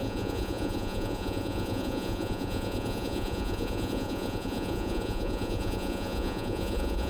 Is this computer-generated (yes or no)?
yes